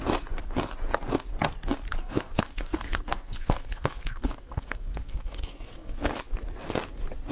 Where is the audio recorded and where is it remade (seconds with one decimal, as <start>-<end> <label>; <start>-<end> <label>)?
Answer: 0.0-2.0 recorded; 2.0-6.2 remade; 6.2-7.3 recorded